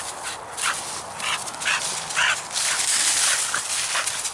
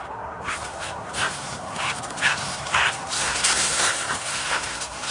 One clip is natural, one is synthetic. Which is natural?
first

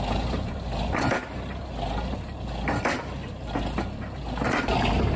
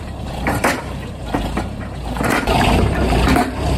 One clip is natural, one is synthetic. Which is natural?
first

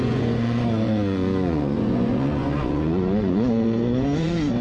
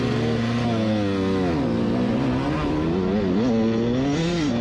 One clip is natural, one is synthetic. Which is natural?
second